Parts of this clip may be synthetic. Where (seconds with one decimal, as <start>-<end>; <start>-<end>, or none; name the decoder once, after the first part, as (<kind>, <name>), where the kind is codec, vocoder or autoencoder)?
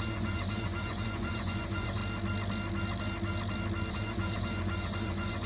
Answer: 0.0-2.0 (vocoder, Vocos); 3.9-5.5